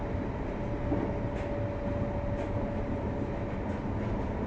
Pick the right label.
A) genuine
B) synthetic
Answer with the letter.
A